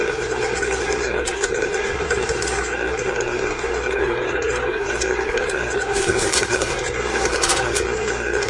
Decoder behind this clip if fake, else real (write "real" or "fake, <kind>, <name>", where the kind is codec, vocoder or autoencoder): fake, codec, SNAC